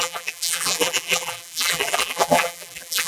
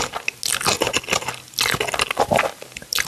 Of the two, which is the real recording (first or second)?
second